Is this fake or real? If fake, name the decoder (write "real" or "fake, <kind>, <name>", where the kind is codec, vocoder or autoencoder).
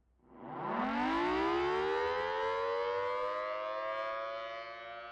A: real